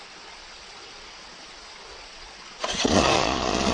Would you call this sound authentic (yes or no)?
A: no